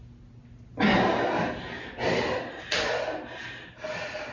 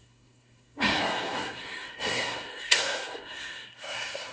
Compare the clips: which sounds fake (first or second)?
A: second